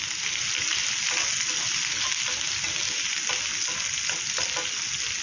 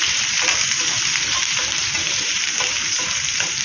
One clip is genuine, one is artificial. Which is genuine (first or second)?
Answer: first